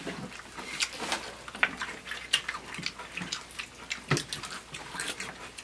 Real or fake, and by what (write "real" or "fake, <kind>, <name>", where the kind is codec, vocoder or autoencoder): real